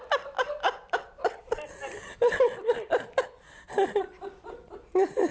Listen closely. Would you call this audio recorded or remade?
recorded